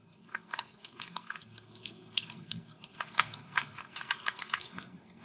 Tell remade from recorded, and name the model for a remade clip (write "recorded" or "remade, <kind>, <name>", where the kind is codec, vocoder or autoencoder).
remade, codec, SNAC